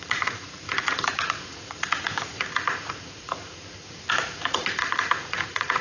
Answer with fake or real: fake